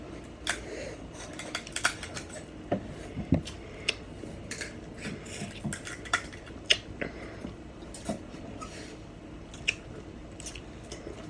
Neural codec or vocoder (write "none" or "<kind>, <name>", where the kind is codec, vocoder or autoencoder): none